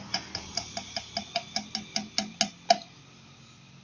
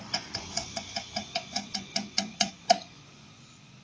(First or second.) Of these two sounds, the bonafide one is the first